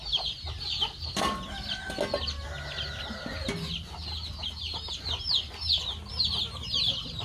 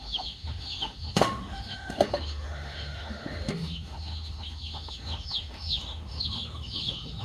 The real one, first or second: first